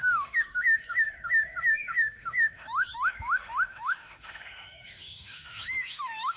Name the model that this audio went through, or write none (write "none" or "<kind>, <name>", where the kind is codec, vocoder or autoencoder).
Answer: autoencoder, DAC-VAE